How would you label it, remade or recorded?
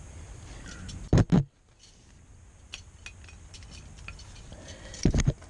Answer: recorded